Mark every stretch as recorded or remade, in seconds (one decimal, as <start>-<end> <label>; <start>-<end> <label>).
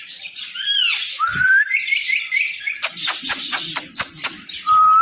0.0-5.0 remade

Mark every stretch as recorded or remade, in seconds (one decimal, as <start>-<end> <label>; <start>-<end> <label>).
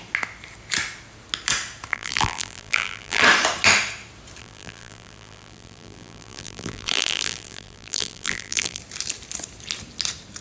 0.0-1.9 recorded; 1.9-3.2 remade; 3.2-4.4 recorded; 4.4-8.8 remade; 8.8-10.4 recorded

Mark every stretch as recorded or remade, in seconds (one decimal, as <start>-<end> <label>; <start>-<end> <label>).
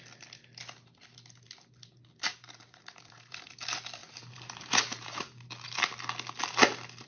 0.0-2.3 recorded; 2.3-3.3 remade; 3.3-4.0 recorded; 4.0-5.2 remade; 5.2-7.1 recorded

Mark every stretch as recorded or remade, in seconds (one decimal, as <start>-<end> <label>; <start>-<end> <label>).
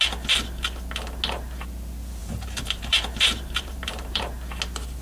0.0-2.2 recorded; 2.2-4.2 remade; 4.2-5.0 recorded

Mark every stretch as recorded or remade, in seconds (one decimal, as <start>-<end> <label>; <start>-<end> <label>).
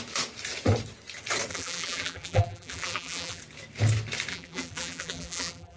0.0-1.5 recorded; 1.5-3.4 remade; 3.4-4.3 recorded; 4.3-5.8 remade